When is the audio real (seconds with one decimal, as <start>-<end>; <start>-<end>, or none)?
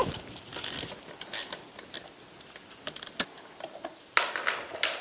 0.0-5.0